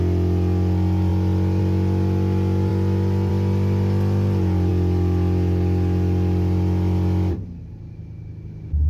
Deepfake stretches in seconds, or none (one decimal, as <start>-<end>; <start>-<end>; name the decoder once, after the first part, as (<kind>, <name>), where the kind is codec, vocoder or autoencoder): none